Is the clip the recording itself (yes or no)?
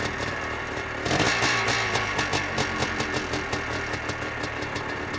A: yes